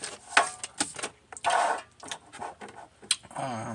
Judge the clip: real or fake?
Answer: real